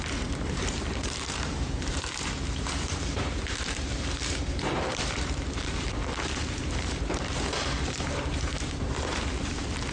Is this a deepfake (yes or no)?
yes